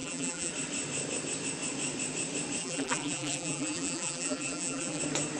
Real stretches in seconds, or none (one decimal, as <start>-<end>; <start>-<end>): 0.5-2.6; 5.0-5.4